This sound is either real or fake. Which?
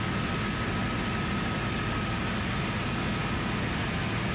real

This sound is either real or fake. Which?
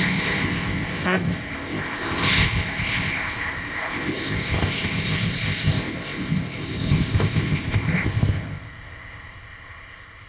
fake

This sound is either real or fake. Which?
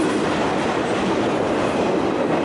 real